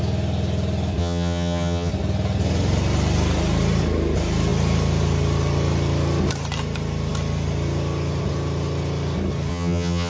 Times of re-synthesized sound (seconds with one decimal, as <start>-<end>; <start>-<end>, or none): 1.0-1.9; 9.5-10.1